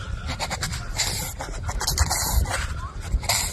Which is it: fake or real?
real